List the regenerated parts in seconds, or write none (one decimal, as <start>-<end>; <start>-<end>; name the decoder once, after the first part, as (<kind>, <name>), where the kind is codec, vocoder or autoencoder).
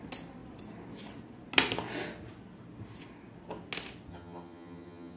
4.1-5.2 (vocoder, HiFi-GAN)